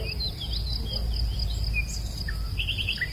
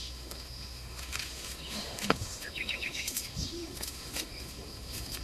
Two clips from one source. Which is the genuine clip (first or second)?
first